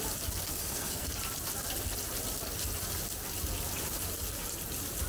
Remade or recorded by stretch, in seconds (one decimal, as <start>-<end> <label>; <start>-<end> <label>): 0.0-0.5 recorded; 0.5-1.1 remade; 1.1-5.1 recorded